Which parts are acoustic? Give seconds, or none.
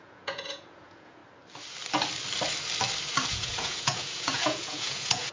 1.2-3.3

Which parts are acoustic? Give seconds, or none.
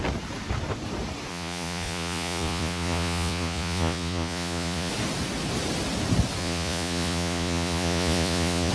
0.0-1.3; 4.9-6.4